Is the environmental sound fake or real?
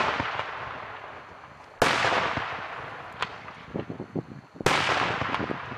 real